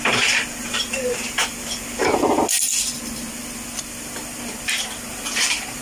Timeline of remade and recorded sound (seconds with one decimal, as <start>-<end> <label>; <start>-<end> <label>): 0.0-2.2 remade; 2.2-5.1 recorded; 5.1-5.8 remade